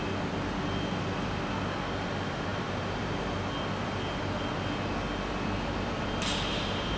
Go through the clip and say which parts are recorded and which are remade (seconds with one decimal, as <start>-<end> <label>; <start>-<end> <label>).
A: 0.0-7.0 recorded

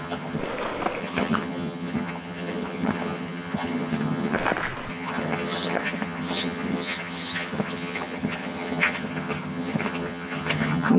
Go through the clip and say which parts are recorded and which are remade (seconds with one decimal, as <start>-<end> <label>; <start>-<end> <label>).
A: 0.0-0.4 remade; 0.4-1.0 recorded; 1.0-4.4 remade; 4.4-4.9 recorded; 4.9-11.0 remade

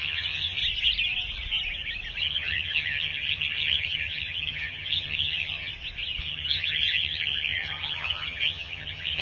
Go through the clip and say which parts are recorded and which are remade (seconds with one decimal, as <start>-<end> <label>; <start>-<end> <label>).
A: 0.0-0.6 remade; 0.6-2.2 recorded; 2.2-5.7 remade; 5.7-6.2 recorded; 6.2-9.2 remade

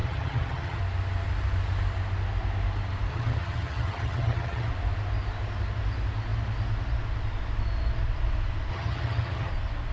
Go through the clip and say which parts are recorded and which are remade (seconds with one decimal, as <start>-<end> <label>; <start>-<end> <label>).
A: 0.0-0.8 remade; 0.8-3.1 recorded; 3.1-4.7 remade; 4.7-8.7 recorded; 8.7-9.5 remade; 9.5-9.9 recorded

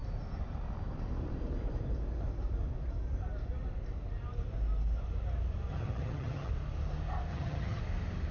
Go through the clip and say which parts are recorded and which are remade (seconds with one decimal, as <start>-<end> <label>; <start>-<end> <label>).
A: 0.0-5.7 recorded; 5.7-6.5 remade; 6.5-7.3 recorded; 7.3-7.8 remade; 7.8-8.3 recorded